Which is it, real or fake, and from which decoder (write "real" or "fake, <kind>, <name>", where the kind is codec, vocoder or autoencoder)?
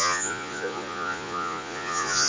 fake, vocoder, Vocos